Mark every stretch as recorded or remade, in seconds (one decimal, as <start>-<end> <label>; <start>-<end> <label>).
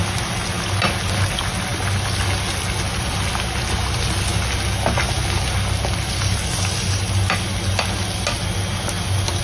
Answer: 0.0-9.4 recorded